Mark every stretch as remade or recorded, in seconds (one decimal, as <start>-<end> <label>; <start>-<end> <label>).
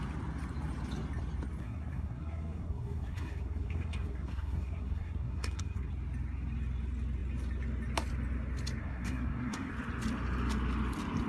0.0-1.6 recorded; 1.6-5.9 remade; 5.9-8.8 recorded; 8.8-9.7 remade; 9.7-11.3 recorded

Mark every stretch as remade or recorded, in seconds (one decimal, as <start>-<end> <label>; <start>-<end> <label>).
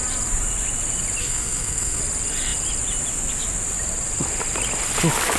0.0-1.2 recorded; 1.2-2.0 remade; 2.0-5.4 recorded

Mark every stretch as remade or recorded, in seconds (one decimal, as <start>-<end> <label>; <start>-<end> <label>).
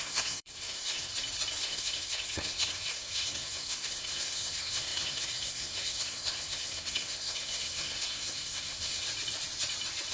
0.0-1.1 remade; 1.1-1.6 recorded; 1.6-9.1 remade; 9.1-10.1 recorded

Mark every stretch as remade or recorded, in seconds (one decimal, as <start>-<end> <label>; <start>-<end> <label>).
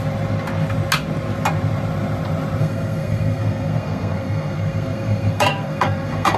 0.0-2.6 recorded; 2.6-6.4 remade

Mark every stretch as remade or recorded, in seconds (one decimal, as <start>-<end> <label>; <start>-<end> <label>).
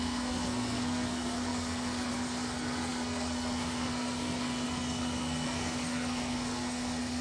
0.0-7.2 remade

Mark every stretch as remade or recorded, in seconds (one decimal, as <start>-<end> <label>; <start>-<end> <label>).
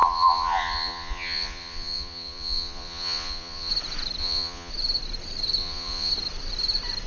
0.0-3.7 remade; 3.7-4.2 recorded; 4.2-4.7 remade; 4.7-5.6 recorded; 5.6-6.1 remade; 6.1-7.1 recorded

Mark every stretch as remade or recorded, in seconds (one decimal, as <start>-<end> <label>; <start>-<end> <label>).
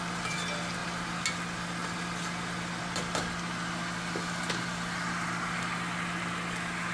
0.0-6.9 recorded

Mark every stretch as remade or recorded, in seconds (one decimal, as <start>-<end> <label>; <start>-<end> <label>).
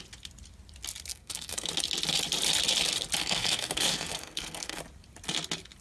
0.0-1.1 recorded; 1.1-1.7 remade; 1.7-3.2 recorded; 3.2-4.8 remade; 4.8-5.8 recorded